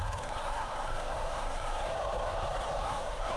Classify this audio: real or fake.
fake